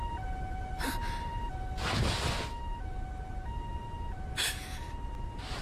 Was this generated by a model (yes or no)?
no